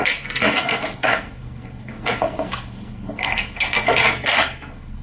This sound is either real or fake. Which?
fake